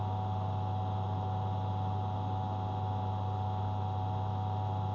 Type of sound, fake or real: real